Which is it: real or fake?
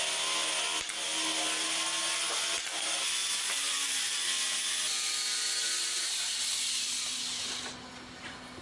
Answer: real